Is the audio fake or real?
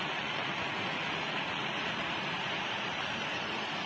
fake